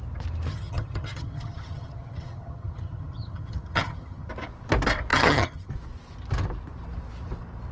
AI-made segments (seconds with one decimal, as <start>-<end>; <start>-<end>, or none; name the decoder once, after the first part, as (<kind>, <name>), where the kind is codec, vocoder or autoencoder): 0.5-4.3 (vocoder, HiFi-GAN); 5.1-5.7